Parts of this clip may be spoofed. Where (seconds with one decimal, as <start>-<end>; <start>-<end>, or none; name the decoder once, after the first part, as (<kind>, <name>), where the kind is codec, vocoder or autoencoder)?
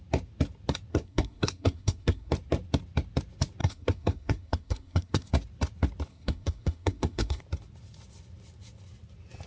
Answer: 0.9-2.3 (codec, SNAC); 3.6-5.3; 6.1-7.4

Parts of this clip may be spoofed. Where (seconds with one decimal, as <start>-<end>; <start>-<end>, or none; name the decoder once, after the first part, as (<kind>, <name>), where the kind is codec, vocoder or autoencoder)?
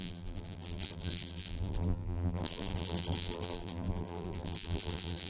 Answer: 0.0-5.3 (vocoder, BigVGAN v2)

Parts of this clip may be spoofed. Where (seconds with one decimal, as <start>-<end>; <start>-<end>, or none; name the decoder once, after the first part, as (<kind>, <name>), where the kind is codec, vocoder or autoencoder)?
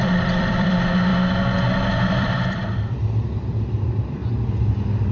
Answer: 0.0-1.1 (vocoder, BigVGAN v2); 1.9-4.2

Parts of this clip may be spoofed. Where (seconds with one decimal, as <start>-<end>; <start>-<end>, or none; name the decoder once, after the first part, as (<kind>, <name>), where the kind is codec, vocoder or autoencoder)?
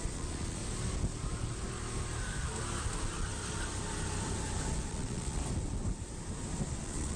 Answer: 0.0-0.6 (vocoder, Vocos); 4.9-5.4; 6.8-7.2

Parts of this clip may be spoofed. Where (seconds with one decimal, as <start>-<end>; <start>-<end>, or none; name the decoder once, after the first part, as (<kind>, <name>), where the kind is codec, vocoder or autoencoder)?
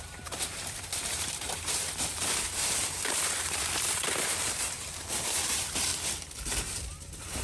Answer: 0.0-5.9 (vocoder, BigVGAN v2); 6.6-7.4